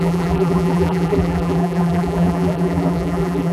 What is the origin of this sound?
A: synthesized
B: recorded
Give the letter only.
A